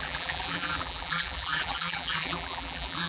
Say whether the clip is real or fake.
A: fake